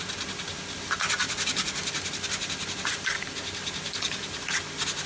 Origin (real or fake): real